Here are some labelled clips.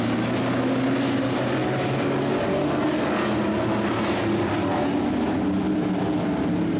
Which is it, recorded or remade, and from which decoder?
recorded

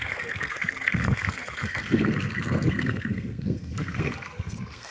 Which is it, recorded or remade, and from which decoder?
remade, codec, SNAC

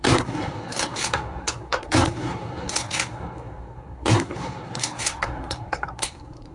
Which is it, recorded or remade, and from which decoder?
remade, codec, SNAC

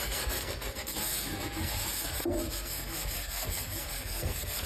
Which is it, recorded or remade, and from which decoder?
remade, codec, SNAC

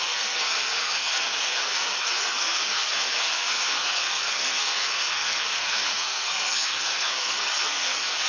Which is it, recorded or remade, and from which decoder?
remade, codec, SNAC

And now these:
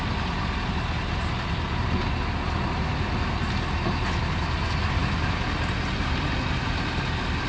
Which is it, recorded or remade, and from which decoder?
recorded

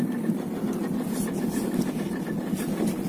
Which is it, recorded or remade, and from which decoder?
recorded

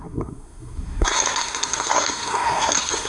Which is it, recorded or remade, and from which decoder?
remade, codec, SNAC